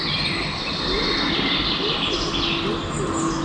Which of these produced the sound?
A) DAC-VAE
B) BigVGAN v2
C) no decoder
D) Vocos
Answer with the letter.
C